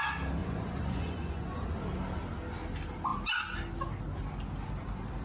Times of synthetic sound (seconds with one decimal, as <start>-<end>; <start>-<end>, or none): 0.4-1.8